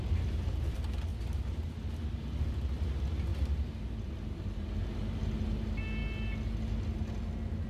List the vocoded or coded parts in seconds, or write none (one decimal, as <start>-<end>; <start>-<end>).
1.1-1.9; 3.3-4.1

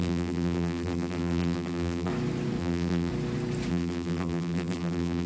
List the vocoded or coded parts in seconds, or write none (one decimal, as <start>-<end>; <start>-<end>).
0.0-2.1; 2.6-3.1; 3.7-5.3